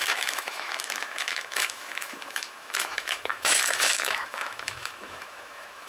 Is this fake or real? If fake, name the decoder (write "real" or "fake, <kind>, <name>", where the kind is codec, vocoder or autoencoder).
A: fake, autoencoder, DAC-VAE